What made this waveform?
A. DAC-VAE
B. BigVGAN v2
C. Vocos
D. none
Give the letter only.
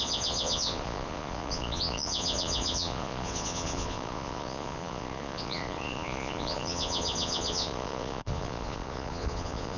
C